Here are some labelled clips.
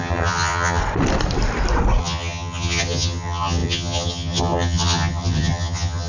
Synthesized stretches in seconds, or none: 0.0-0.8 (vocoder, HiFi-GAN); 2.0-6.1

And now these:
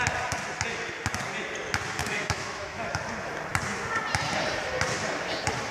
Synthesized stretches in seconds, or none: 2.0-3.0 (autoencoder, DAC-VAE)

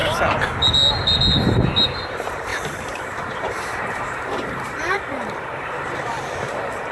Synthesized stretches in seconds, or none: 2.5-6.3 (vocoder, BigVGAN v2)

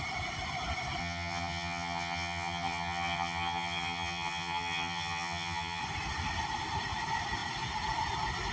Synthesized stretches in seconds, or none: 1.0-5.8 (vocoder, HiFi-GAN)

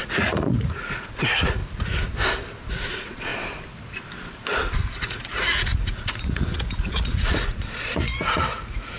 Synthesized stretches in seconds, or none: 0.0-1.6 (vocoder, Vocos); 2.7-3.3; 5.0-9.0

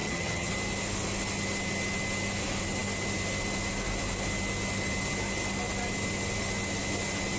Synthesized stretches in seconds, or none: 0.0-0.5 (vocoder, HiFi-GAN)

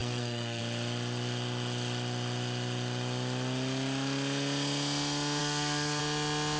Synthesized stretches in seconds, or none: 0.0-0.6 (codec, SNAC); 5.4-6.0

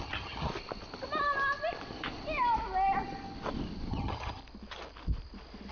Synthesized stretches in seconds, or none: 0.0-0.5 (vocoder, HiFi-GAN); 3.9-4.4